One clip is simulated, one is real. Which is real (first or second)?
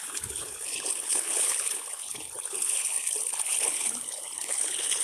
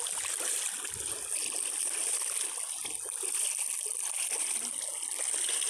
second